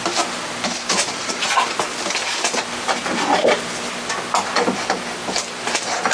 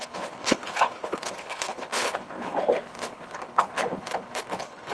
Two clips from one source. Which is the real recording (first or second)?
first